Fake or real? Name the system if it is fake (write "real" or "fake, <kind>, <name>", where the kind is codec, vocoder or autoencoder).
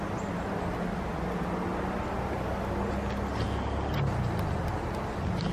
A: real